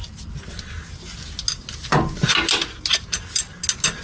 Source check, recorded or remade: recorded